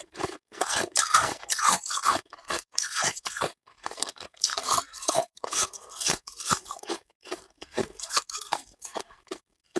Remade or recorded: remade